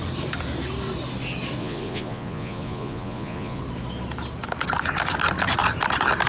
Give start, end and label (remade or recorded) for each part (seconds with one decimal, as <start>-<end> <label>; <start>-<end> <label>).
0.0-1.6 recorded; 1.6-3.6 remade; 3.6-6.3 recorded